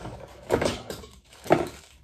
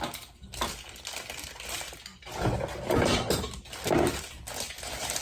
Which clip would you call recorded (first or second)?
second